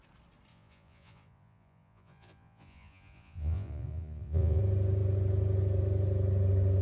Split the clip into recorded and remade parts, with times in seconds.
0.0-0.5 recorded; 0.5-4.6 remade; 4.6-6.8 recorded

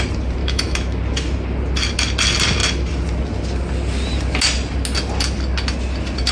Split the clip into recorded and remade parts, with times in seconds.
0.0-0.4 recorded; 0.4-1.0 remade; 1.0-6.3 recorded

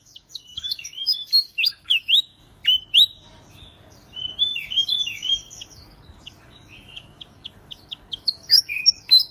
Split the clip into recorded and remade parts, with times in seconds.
0.0-2.6 remade; 2.6-3.5 recorded; 3.5-9.3 remade

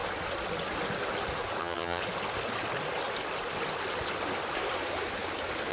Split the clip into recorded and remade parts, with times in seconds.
0.0-1.6 recorded; 1.6-2.0 remade; 2.0-5.7 recorded